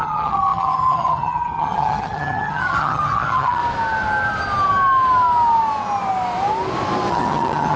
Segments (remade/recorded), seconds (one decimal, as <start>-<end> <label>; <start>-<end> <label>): 0.0-3.6 remade; 3.6-7.1 recorded; 7.1-7.8 remade